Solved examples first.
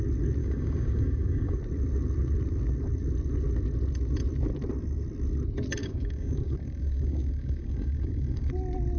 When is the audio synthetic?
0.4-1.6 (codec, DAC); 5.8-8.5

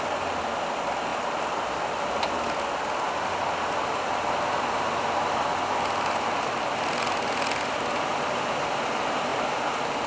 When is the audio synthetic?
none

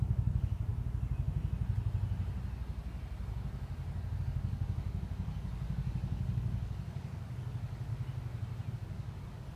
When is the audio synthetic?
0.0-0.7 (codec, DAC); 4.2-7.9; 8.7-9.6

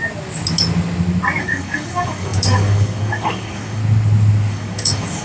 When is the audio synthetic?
1.4-3.8 (codec, DAC); 4.5-5.2